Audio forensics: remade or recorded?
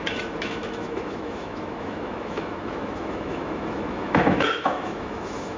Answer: remade